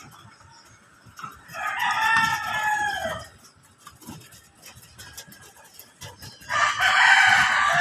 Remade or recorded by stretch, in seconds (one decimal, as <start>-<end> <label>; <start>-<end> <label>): 0.0-7.8 recorded